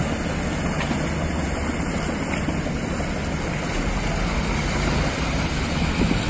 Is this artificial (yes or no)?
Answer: no